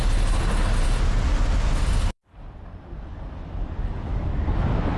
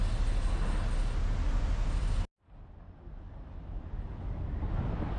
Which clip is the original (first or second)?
second